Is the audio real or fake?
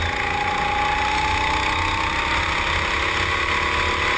real